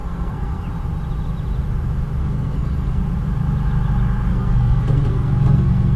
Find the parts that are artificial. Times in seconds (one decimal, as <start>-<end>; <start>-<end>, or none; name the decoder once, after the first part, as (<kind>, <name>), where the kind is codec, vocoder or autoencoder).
0.0-0.6 (codec, SNAC); 2.2-3.0; 4.3-6.0